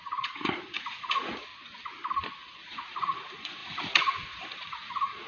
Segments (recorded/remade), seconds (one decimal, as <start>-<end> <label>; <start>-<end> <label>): 0.0-1.5 remade; 1.5-2.3 recorded; 2.3-5.3 remade